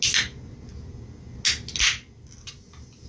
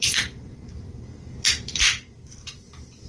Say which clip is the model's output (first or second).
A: second